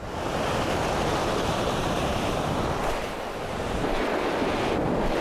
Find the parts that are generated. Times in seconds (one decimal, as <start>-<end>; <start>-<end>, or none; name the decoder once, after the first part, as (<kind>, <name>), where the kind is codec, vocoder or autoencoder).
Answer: 1.2-2.3 (vocoder, BigVGAN v2); 4.4-5.2